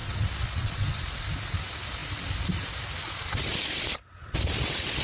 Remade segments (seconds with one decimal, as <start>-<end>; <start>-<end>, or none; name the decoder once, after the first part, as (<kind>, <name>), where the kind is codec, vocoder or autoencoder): 0.0-1.0 (vocoder, WaveNeXt)